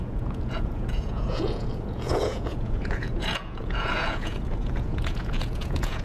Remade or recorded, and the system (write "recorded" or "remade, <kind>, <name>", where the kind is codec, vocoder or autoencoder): remade, vocoder, Vocos